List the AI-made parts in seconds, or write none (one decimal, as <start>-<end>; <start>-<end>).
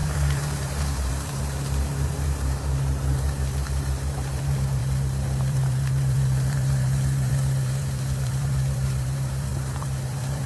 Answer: 0.0-10.5